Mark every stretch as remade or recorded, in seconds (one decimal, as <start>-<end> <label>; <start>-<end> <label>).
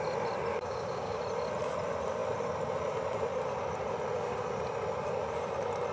0.0-0.5 recorded; 0.5-1.2 remade; 1.2-5.9 recorded